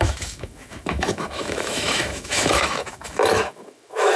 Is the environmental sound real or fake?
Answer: fake